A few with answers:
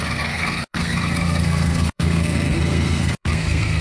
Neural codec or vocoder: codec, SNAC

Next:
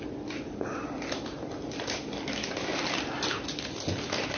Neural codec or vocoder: none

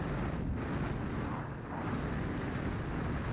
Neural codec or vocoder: none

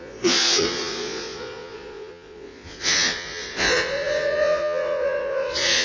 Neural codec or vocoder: vocoder, Vocos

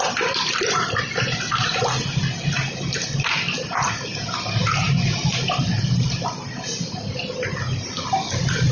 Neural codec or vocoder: none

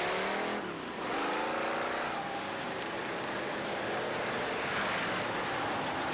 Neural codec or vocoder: none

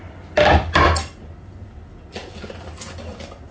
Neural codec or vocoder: none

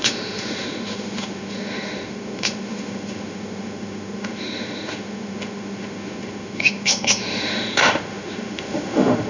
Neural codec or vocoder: autoencoder, DAC-VAE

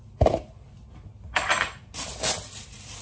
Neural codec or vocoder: none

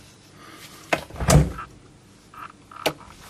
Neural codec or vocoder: none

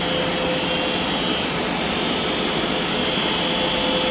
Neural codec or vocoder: none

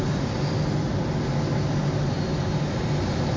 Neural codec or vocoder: none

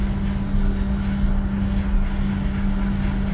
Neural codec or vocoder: none